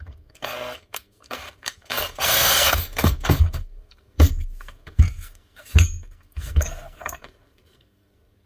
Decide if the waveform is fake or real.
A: fake